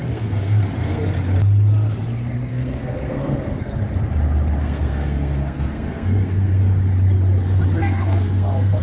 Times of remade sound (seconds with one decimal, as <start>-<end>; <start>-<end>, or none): 0.0-1.0; 2.5-3.8; 4.6-6.6; 7.8-8.8